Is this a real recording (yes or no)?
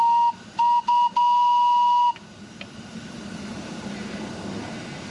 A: yes